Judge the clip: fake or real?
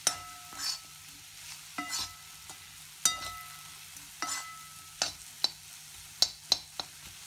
real